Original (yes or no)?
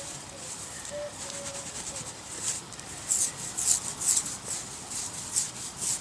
yes